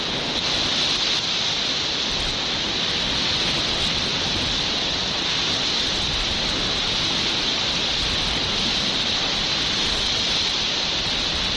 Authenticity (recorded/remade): recorded